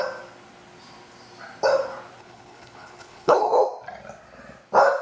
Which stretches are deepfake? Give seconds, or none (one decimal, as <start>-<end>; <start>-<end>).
2.2-3.5